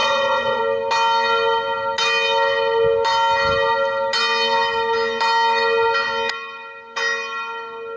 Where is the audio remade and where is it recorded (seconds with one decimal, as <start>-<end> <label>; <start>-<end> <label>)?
0.0-0.6 remade; 0.6-8.0 recorded